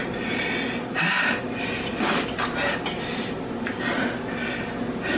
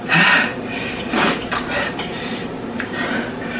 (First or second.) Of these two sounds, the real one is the first